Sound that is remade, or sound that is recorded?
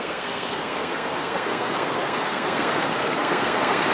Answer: remade